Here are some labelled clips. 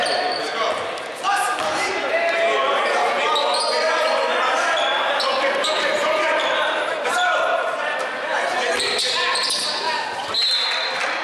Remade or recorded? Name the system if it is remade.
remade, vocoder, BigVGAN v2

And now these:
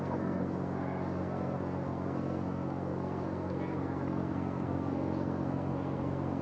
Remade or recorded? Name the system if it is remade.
remade, codec, SNAC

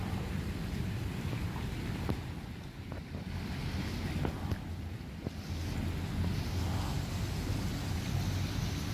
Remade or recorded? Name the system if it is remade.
recorded